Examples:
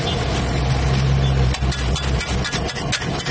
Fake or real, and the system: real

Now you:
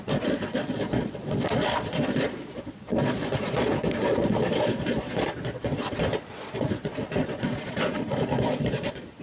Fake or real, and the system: fake, vocoder, Vocos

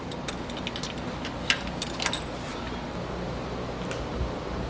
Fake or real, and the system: real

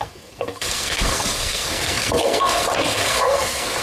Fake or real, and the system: fake, codec, SNAC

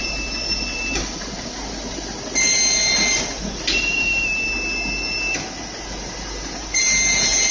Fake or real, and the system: real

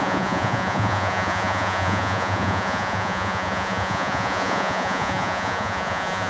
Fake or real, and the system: fake, vocoder, Vocos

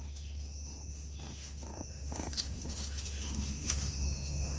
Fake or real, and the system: fake, autoencoder, DAC-VAE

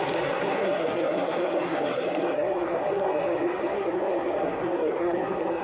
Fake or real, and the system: fake, codec, SNAC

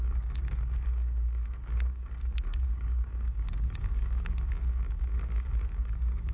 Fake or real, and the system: fake, codec, DAC